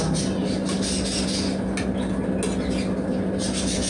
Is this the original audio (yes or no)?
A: yes